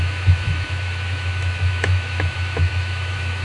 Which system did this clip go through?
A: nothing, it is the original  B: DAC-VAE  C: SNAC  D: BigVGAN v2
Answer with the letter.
B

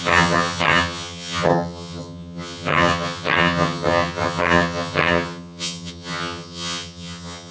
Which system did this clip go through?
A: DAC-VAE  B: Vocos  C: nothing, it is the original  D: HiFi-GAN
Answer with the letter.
D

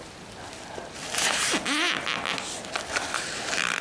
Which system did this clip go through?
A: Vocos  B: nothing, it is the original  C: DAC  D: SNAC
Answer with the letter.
B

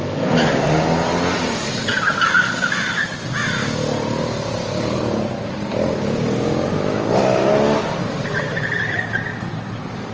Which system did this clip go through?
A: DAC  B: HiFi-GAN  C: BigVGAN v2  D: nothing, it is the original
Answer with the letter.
D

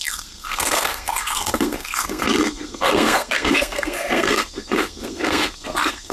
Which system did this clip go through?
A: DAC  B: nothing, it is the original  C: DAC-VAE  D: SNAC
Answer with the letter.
D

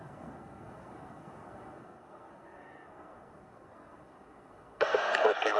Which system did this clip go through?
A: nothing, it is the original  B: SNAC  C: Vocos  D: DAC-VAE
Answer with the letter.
B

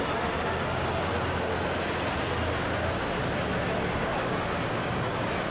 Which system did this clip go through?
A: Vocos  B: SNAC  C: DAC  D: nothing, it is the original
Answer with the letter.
D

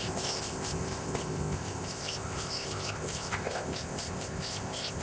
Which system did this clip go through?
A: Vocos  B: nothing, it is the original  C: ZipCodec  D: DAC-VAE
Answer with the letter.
C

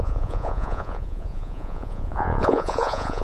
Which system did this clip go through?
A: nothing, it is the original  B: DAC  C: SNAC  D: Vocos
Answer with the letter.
D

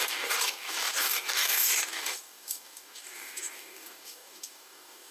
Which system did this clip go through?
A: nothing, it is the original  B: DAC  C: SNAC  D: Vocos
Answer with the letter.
B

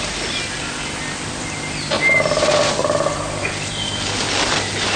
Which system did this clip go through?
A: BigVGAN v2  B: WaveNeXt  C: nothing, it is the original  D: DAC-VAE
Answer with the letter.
C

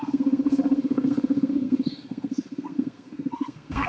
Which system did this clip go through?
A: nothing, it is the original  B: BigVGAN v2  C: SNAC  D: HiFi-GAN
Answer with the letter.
C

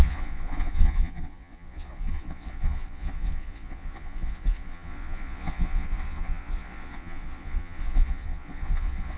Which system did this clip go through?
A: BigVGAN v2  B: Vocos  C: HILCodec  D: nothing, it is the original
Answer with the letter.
B